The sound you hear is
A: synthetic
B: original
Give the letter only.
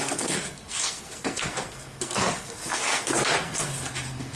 A